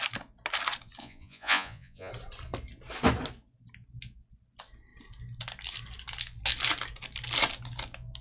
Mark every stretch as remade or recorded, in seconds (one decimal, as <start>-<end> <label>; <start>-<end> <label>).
0.0-1.0 recorded; 1.0-2.1 remade; 2.1-8.2 recorded